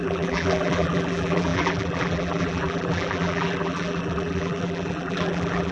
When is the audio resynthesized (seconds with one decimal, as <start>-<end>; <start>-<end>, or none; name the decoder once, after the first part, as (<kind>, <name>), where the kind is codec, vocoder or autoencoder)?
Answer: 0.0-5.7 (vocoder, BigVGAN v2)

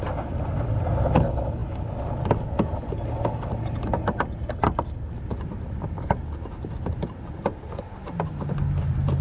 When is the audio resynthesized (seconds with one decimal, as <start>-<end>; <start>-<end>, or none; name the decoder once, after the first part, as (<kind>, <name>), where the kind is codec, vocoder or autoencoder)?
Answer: none

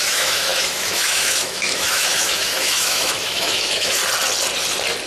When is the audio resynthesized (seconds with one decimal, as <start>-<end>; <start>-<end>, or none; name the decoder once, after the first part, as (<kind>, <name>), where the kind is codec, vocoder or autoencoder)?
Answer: 0.0-4.0 (autoencoder, DAC-VAE)

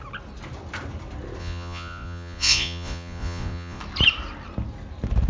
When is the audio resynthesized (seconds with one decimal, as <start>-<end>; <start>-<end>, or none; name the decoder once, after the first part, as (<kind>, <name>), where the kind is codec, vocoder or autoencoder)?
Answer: 1.4-3.8 (vocoder, Vocos)